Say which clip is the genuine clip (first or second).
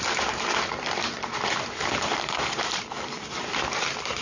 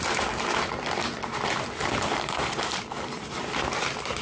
second